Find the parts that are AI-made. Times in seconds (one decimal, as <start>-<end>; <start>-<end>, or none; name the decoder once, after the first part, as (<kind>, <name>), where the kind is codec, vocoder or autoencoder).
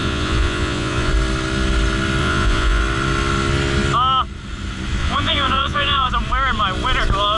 0.0-1.1 (vocoder, Vocos); 2.2-2.8; 5.0-6.1